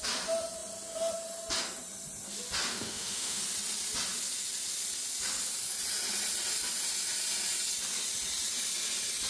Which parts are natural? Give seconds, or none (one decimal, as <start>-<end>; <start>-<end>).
0.0-2.7; 3.4-9.3